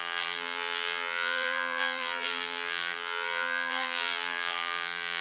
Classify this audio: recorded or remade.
remade